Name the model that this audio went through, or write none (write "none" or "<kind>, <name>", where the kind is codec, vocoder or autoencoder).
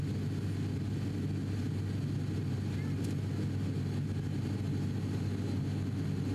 none